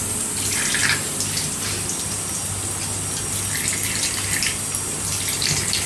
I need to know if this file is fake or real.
real